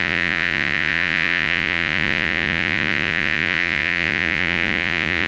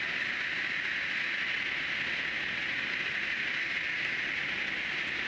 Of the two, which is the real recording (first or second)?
second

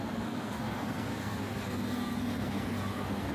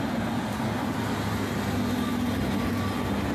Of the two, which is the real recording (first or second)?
second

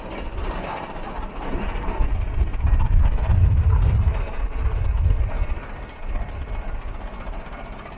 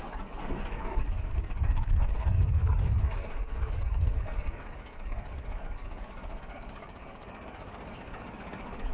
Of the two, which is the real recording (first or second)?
first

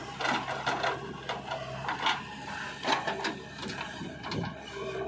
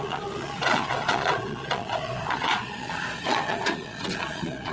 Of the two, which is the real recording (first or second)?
first